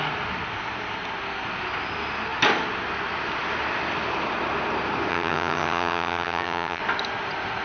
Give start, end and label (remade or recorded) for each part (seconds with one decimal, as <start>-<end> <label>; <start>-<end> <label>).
0.0-5.1 recorded; 5.1-6.8 remade; 6.8-7.6 recorded